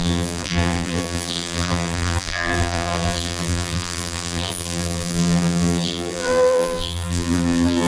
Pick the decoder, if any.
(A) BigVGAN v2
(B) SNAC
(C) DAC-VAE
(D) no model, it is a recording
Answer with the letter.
A